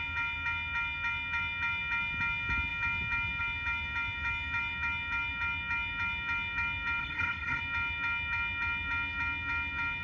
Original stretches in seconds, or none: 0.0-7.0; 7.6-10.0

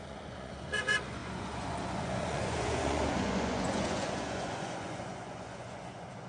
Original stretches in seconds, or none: none

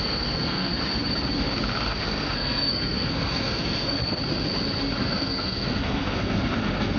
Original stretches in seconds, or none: 0.7-1.9; 4.2-5.0